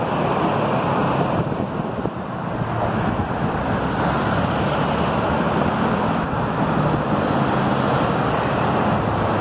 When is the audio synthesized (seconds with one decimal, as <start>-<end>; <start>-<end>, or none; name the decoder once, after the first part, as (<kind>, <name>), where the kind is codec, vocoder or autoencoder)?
none